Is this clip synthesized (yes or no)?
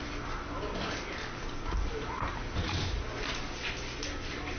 no